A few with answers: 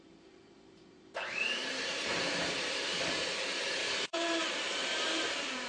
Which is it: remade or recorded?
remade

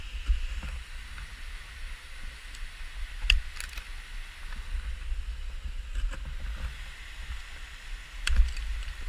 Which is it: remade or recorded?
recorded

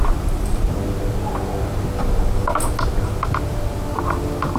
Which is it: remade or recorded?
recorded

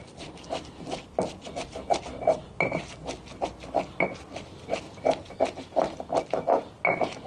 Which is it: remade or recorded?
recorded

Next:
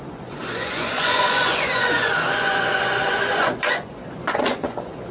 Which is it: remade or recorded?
remade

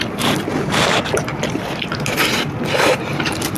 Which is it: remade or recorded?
recorded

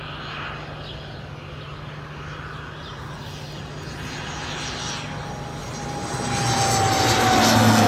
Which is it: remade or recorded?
recorded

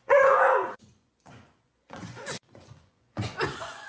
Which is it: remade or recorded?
remade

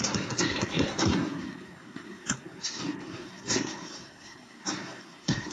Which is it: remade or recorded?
remade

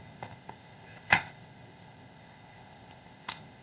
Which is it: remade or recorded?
remade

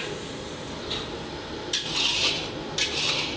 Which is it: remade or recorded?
recorded